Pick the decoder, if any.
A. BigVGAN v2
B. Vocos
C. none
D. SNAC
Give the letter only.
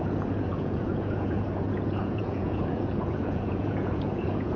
B